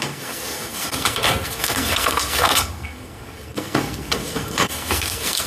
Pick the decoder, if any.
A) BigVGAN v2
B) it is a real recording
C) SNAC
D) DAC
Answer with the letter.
C